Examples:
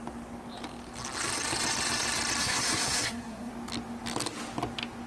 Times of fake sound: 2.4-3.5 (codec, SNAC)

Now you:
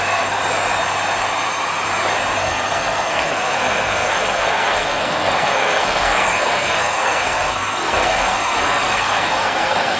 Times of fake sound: 0.0-0.4 (codec, SNAC); 2.4-10.0

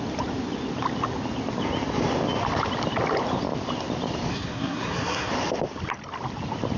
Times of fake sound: 4.3-5.3 (codec, SNAC)

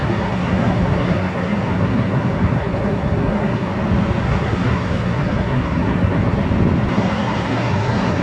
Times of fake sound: 0.0-3.7 (codec, SNAC); 4.2-6.4; 6.9-8.2

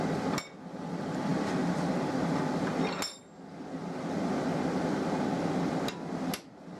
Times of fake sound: none